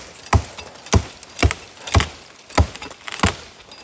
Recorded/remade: recorded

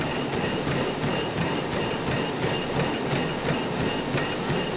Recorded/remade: recorded